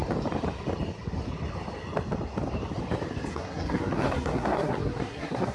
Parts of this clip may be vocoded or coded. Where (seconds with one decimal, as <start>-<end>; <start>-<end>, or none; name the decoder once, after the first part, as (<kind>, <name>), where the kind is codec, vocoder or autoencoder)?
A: 3.3-5.5 (codec, SNAC)